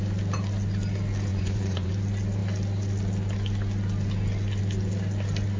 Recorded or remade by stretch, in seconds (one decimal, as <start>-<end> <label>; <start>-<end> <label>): 0.0-1.3 recorded; 1.3-1.9 remade; 1.9-5.6 recorded